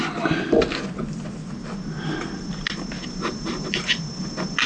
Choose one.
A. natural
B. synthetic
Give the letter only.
A